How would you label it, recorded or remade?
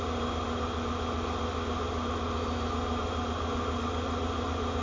recorded